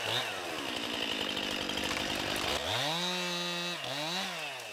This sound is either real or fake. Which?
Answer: real